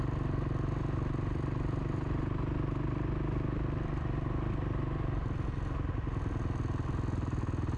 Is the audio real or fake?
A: real